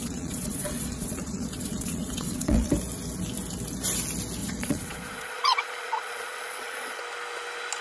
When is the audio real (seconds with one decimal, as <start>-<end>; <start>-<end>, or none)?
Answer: 2.7-4.4; 7.0-7.8